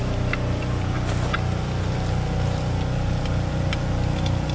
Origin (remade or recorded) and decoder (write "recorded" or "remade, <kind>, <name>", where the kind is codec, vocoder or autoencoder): recorded